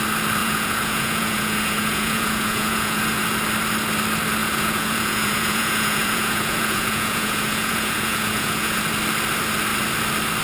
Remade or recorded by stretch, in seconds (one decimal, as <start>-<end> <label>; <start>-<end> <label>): 0.0-0.4 recorded; 0.4-3.2 remade; 3.2-4.4 recorded; 4.4-8.8 remade; 8.8-10.4 recorded